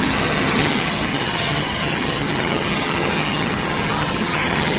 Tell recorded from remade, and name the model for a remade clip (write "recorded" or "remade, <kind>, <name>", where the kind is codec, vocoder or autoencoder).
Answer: remade, vocoder, HiFi-GAN